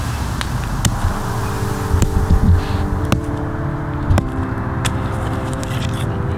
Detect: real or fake real